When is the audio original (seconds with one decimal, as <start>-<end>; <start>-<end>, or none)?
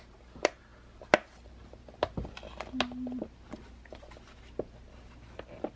0.0-5.8